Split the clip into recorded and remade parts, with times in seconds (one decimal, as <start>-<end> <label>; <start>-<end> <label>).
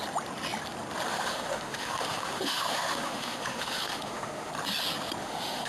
0.0-1.1 recorded; 1.1-4.5 remade; 4.5-5.2 recorded; 5.2-5.7 remade